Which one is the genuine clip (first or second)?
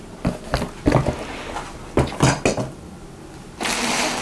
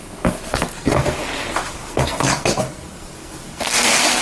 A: first